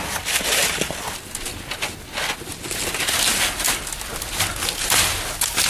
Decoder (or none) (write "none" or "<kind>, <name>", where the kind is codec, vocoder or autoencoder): none